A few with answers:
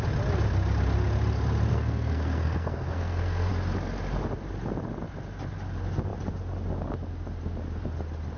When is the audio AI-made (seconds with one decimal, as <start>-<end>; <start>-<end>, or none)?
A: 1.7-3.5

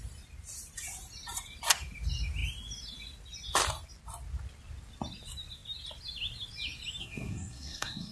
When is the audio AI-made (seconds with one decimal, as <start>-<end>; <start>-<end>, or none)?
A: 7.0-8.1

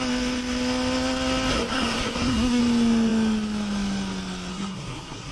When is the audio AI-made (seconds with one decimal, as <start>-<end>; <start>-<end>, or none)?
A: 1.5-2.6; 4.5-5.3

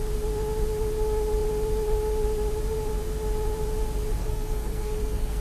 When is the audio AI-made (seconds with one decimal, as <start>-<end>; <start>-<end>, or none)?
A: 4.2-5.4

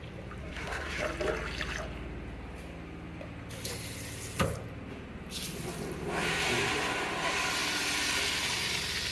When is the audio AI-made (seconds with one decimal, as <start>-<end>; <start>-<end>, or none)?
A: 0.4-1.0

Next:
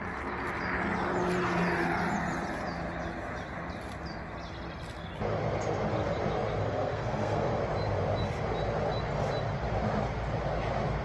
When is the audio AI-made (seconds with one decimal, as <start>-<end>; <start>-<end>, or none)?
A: 6.6-7.6

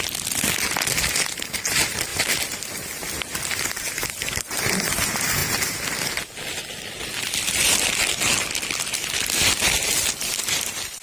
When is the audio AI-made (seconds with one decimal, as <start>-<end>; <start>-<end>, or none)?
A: none